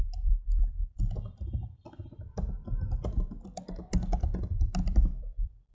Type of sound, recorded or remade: remade